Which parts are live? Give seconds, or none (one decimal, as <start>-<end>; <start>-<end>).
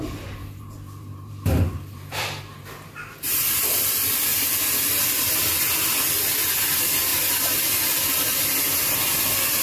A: 0.0-0.4; 2.4-9.6